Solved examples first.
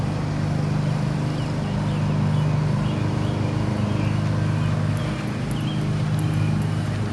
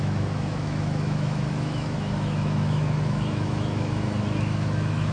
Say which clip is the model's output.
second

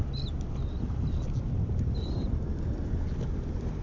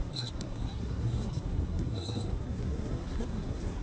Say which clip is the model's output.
second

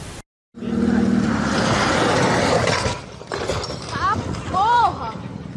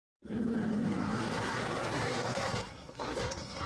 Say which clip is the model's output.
second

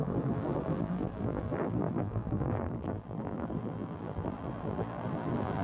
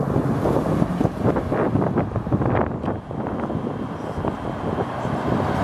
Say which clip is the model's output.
first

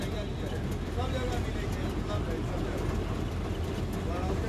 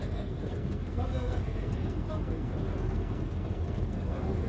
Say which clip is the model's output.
second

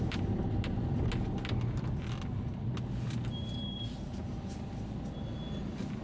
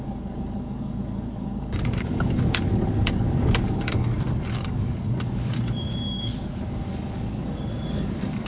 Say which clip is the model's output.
second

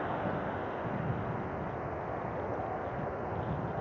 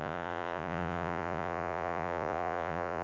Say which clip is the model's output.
second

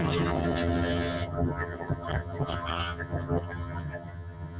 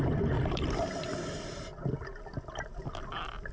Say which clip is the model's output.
first